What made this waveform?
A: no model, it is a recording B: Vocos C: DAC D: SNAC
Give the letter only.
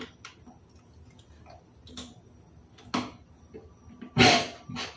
A